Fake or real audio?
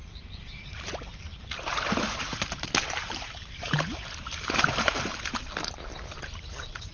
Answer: fake